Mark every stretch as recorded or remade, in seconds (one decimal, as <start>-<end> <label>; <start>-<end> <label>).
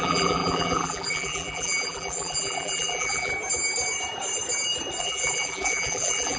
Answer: 0.0-3.3 remade; 3.3-5.0 recorded; 5.0-6.4 remade